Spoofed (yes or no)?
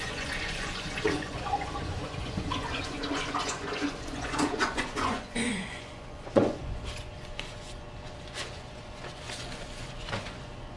yes